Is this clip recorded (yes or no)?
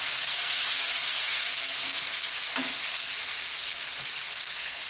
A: no